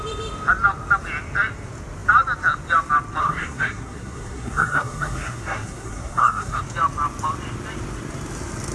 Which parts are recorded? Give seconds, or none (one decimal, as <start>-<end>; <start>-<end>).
0.0-3.2; 6.6-8.7